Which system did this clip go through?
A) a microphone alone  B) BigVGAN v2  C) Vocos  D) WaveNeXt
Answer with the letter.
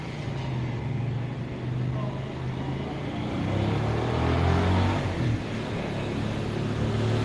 A